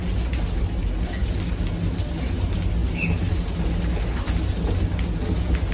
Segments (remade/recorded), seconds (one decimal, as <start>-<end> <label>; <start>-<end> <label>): 0.0-5.7 recorded